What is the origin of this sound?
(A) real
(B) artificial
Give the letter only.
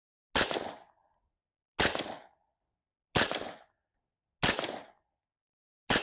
A